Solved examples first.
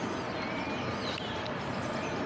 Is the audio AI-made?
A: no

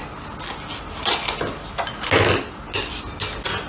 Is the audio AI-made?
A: no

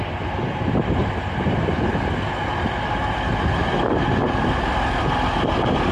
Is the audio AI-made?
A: no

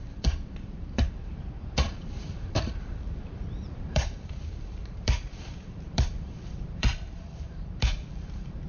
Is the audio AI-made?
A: yes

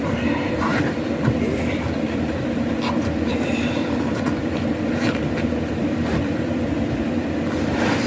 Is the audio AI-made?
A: yes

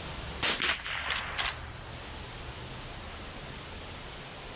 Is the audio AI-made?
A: no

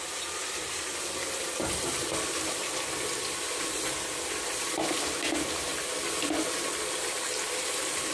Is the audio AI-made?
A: yes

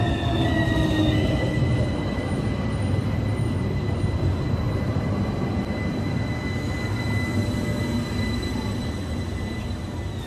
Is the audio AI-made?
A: no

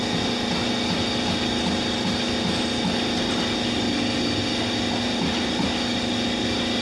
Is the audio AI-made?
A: no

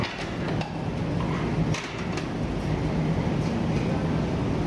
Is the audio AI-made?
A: no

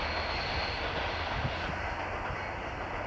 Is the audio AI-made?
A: no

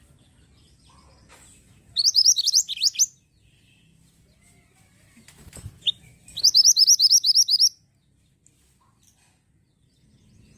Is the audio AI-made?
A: no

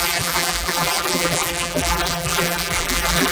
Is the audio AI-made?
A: yes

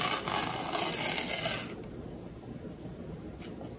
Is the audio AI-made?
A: no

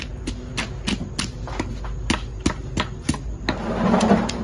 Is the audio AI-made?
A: no